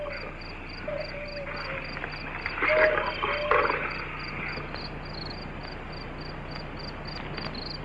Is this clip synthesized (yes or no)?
no